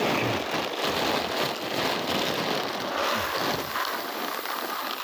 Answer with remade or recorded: recorded